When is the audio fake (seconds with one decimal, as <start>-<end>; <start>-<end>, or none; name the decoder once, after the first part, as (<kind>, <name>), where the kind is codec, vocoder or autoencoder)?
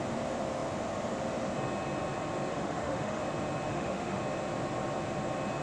2.5-3.2 (autoencoder, DAC-VAE); 3.7-4.2